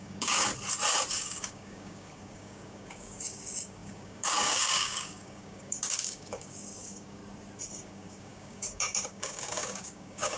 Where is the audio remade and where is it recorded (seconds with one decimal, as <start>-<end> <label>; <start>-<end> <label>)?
0.0-0.5 remade; 0.5-1.1 recorded; 1.1-7.2 remade; 7.2-7.7 recorded; 7.7-10.4 remade